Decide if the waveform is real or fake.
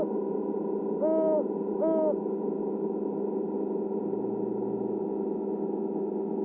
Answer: real